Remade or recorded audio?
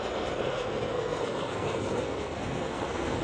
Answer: remade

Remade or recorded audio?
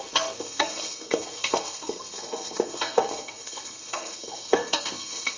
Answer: remade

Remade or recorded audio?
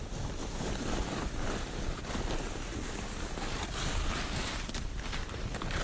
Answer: recorded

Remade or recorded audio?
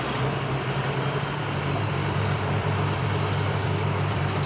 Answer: remade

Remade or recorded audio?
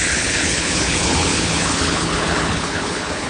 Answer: remade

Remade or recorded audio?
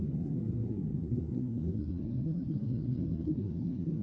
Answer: remade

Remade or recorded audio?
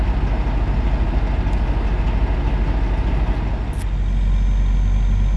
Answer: recorded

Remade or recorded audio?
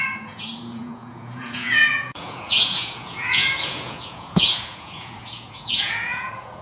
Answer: remade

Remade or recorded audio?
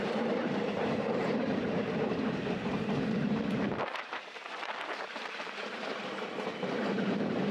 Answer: remade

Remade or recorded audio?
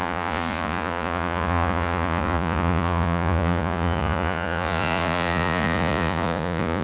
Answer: remade